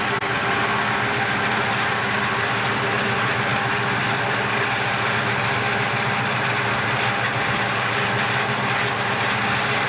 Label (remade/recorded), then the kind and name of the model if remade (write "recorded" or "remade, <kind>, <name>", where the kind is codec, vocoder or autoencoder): recorded